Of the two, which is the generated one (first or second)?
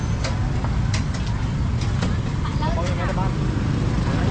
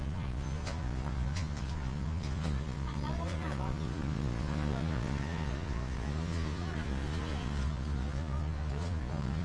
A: second